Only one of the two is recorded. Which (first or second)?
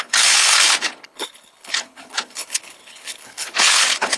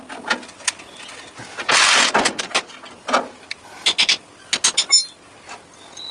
second